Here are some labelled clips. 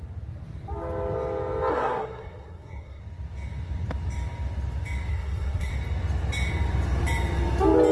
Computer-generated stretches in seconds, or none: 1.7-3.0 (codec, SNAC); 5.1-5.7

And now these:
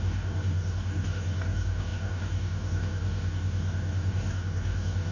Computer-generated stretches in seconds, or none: 0.0-5.1 (codec, DAC)

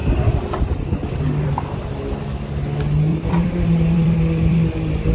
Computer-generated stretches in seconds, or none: 0.0-1.5 (vocoder, BigVGAN v2); 3.1-5.1